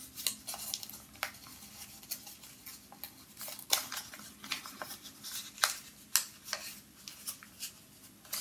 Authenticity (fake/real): real